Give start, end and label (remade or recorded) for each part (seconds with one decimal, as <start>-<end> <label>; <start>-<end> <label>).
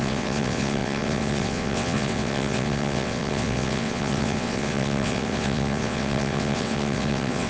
0.0-7.5 remade